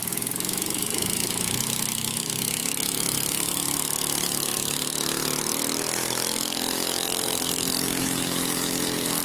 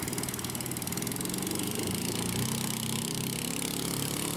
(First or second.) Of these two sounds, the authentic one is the second